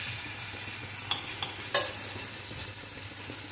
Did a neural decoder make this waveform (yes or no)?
no